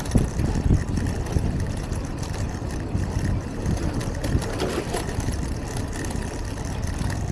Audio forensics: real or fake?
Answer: real